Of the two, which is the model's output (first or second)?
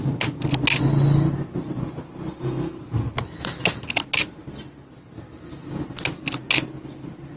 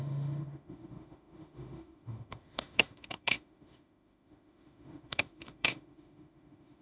second